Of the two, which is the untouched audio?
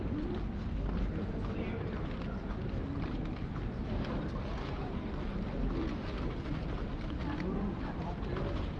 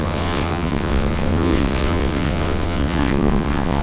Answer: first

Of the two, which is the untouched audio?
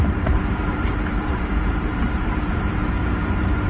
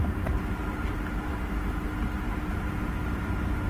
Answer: second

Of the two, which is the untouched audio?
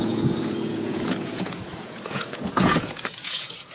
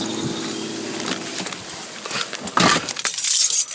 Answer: second